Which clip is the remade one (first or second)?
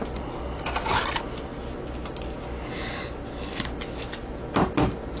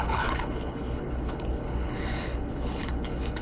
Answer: second